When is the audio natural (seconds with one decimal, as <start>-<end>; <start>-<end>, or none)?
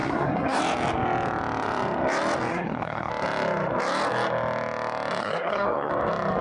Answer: 0.6-2.5; 3.1-5.2; 5.9-6.4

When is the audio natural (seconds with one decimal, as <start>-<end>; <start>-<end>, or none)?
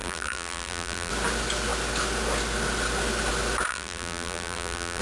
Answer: 1.1-3.7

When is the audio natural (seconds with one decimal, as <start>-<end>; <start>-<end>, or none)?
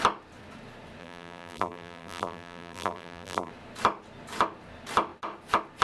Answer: 0.0-1.0; 3.5-5.8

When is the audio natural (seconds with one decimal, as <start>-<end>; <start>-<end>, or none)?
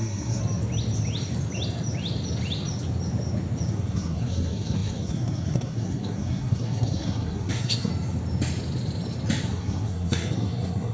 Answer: 0.4-3.7; 7.9-9.5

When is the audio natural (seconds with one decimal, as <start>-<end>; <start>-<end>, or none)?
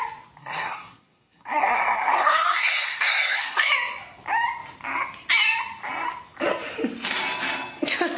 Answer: 0.0-0.4; 3.7-8.2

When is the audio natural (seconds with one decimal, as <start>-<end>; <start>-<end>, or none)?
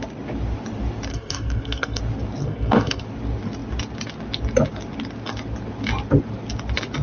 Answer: 0.0-1.1; 2.0-2.4; 3.0-7.0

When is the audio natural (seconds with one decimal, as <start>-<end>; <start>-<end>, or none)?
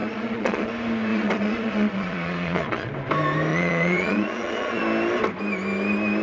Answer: 0.7-1.1; 2.9-3.5; 4.8-6.2